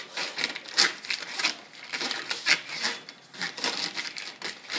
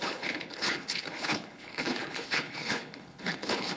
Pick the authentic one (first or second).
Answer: first